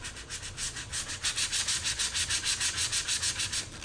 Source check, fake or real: real